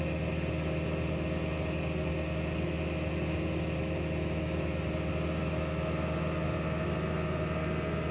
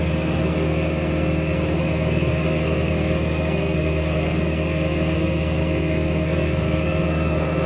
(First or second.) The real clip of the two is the first